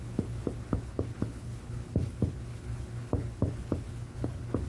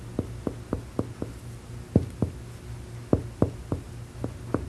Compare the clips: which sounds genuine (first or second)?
second